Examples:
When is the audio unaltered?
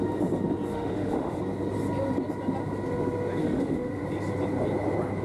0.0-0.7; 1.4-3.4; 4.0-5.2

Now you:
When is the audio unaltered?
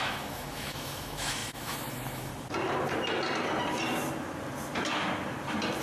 2.3-5.8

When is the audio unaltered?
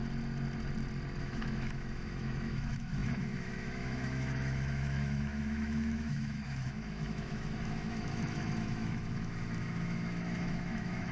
0.0-1.2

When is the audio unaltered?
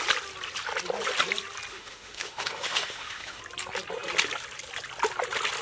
0.0-1.7; 3.4-5.6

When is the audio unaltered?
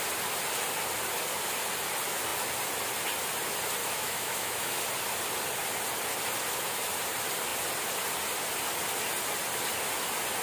0.0-3.8; 4.8-10.4